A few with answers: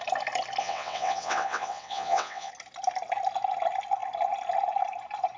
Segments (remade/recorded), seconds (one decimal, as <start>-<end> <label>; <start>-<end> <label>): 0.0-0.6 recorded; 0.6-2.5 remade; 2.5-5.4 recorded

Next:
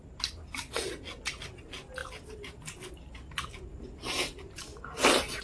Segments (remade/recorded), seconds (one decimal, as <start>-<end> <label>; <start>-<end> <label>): 0.0-5.4 recorded

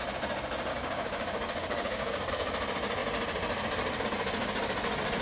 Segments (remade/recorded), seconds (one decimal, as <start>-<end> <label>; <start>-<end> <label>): 0.0-0.7 recorded; 0.7-2.3 remade; 2.3-5.2 recorded